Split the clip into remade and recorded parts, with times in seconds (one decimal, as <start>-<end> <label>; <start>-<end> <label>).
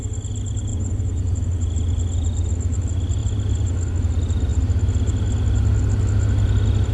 0.0-0.7 recorded; 0.7-1.4 remade; 1.4-6.9 recorded